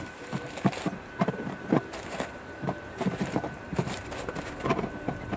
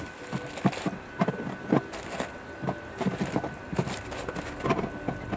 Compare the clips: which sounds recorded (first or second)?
second